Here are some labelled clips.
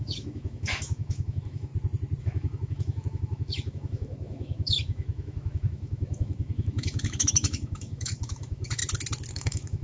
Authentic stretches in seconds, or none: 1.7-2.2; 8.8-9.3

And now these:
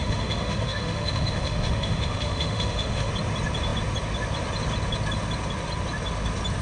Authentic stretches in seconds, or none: 3.1-6.6

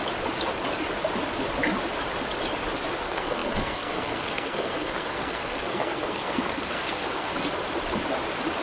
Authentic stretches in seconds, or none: 0.0-3.0; 7.3-8.6